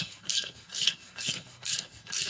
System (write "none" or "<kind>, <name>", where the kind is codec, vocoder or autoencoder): codec, SNAC